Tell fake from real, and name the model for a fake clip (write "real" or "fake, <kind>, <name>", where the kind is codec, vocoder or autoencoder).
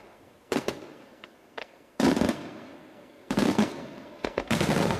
fake, codec, SNAC